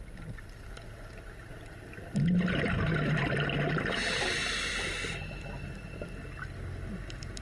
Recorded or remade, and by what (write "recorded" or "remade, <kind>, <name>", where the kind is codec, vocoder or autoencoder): recorded